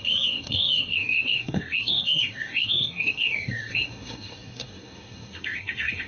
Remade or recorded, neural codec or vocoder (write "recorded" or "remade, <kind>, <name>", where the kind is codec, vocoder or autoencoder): remade, codec, SNAC